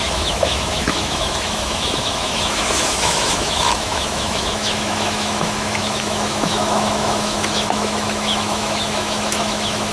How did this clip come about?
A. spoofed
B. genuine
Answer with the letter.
A